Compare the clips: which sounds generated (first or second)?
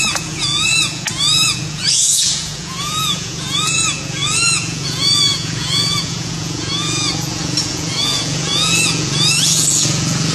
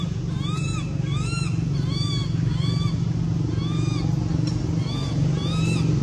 first